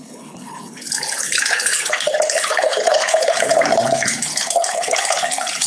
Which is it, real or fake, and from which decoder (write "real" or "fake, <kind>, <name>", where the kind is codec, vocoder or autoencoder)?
fake, codec, HILCodec